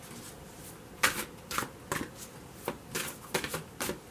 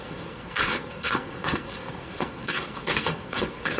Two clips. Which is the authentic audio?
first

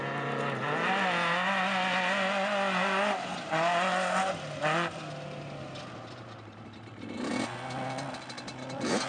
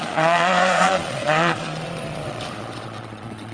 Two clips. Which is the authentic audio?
first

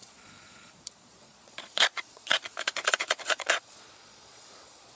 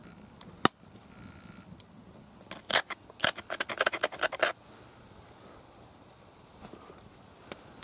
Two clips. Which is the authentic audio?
second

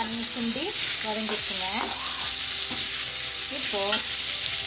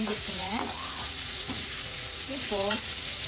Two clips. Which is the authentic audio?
first